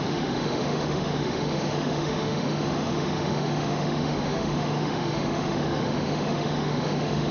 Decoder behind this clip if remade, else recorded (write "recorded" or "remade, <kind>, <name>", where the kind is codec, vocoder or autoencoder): remade, autoencoder, DAC-VAE